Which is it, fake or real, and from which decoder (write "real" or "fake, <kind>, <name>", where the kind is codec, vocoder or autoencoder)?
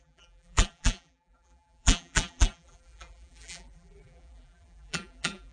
fake, vocoder, BigVGAN v2